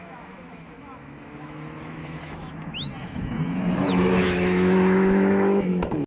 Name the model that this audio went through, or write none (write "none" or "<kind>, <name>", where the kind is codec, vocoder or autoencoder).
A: autoencoder, DAC-VAE